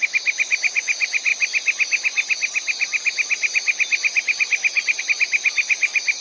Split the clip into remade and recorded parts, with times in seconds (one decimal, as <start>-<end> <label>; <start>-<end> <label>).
0.0-6.2 recorded